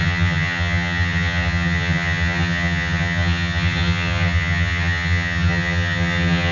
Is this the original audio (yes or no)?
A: no